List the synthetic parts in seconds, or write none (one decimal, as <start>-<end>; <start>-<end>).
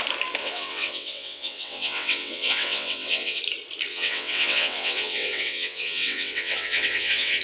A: 0.4-3.4; 3.9-7.4